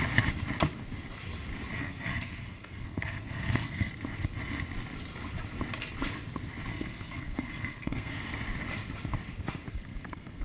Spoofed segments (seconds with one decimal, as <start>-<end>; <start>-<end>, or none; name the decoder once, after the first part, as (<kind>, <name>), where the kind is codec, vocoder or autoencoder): 1.7-3.9 (codec, SNAC); 6.7-8.1; 9.7-10.4